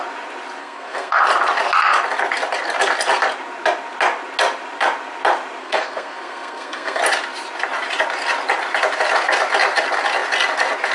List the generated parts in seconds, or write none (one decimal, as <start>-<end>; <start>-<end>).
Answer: 0.6-1.2; 5.6-7.0